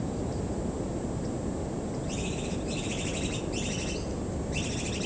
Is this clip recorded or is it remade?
recorded